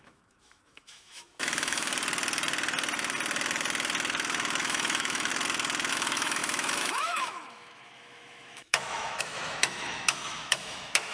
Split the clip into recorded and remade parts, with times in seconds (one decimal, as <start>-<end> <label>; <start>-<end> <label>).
0.0-1.9 remade; 1.9-4.6 recorded; 4.6-5.3 remade; 5.3-5.9 recorded; 5.9-11.1 remade